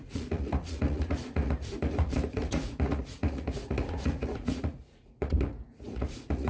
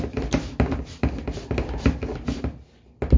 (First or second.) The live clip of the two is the second